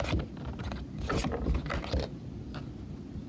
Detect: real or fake real